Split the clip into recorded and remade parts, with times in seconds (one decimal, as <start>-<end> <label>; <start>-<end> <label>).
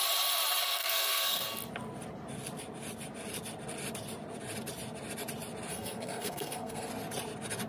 0.0-0.6 recorded; 0.6-1.5 remade; 1.5-5.7 recorded; 5.7-6.9 remade; 6.9-7.7 recorded